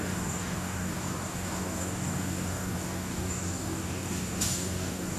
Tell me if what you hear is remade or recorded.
remade